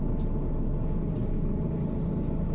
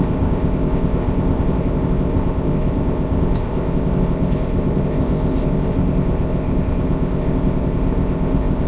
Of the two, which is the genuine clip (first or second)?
first